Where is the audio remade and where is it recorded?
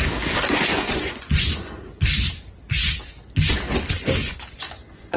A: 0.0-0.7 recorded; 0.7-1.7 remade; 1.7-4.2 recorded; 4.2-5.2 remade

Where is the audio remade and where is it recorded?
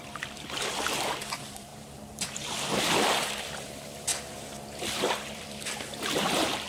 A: 0.0-1.7 remade; 1.7-2.3 recorded; 2.3-4.1 remade; 4.1-5.1 recorded; 5.1-6.7 remade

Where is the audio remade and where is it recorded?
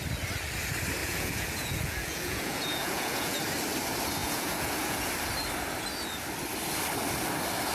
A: 0.0-1.0 recorded; 1.0-3.4 remade; 3.4-4.2 recorded; 4.2-5.1 remade; 5.1-7.7 recorded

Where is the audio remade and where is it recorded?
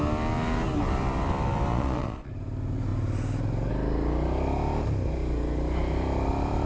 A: 0.0-1.7 recorded; 1.7-2.3 remade; 2.3-6.7 recorded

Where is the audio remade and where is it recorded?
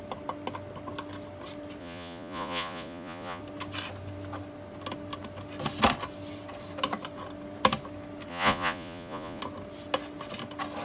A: 0.0-1.8 recorded; 1.8-3.4 remade; 3.4-8.3 recorded; 8.3-9.4 remade; 9.4-10.8 recorded